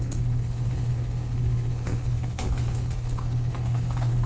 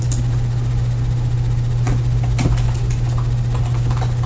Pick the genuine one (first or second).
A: second